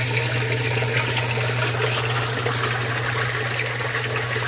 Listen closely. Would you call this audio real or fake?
real